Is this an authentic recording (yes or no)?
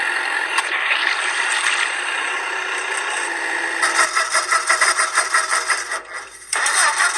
no